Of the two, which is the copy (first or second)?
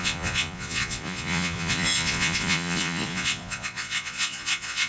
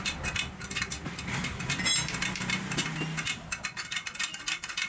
first